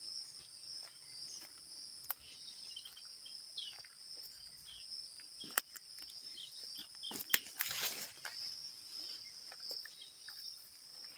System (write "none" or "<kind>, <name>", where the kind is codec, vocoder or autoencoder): none